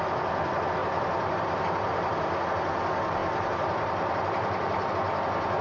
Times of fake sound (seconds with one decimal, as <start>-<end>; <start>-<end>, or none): 0.8-2.4; 3.2-4.9